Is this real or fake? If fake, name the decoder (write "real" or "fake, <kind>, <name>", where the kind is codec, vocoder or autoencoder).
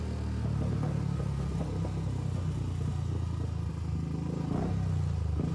real